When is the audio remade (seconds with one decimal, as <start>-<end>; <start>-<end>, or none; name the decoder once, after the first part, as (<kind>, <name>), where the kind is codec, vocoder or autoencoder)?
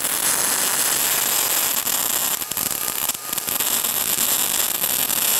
2.2-4.0 (vocoder, BigVGAN v2)